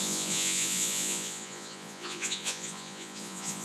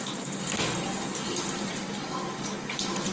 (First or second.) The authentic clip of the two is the second